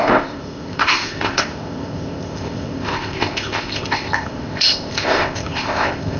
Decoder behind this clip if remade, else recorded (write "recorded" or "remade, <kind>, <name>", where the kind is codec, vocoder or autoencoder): remade, codec, ZipCodec